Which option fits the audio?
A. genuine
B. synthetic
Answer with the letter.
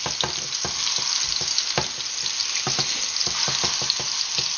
A